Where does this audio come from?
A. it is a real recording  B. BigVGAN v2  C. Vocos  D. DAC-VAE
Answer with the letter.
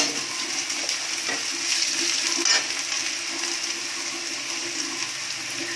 A